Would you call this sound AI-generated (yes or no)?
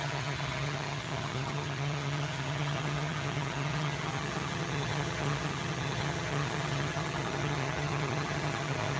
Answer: yes